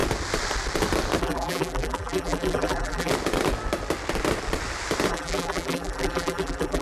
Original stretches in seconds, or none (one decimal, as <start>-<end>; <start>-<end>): 0.0-1.2; 3.1-5.1